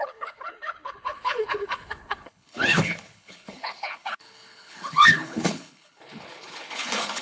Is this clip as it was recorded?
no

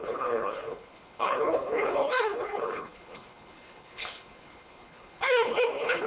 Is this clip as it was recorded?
no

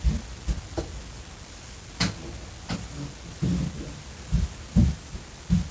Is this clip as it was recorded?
yes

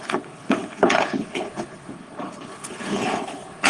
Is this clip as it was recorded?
no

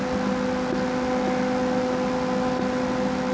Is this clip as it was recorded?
yes